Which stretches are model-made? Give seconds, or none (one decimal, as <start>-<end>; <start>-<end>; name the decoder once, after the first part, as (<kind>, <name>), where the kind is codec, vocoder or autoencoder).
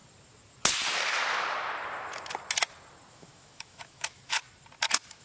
3.1-4.4 (autoencoder, DAC-VAE)